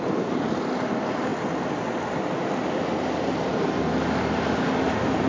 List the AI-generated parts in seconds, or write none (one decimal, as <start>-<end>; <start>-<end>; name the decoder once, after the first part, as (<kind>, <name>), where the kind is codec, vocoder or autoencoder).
none